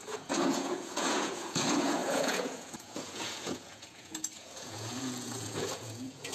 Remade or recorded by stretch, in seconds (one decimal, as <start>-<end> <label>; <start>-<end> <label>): 0.0-6.3 remade